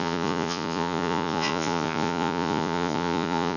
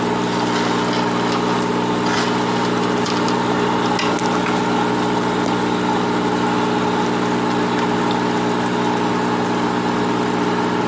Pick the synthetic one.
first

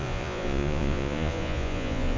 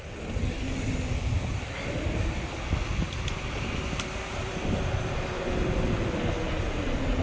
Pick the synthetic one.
first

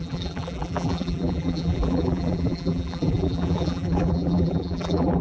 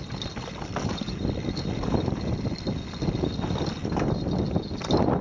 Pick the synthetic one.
first